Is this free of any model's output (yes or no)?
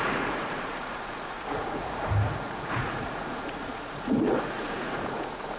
no